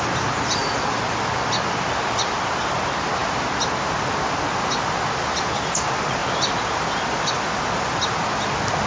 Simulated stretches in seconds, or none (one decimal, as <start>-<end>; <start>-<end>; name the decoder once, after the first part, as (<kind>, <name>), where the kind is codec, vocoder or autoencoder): none